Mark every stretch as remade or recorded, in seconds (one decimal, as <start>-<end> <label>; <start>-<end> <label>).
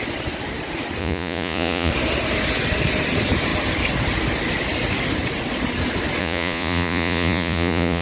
0.0-1.0 recorded; 1.0-1.9 remade; 1.9-6.2 recorded; 6.2-8.0 remade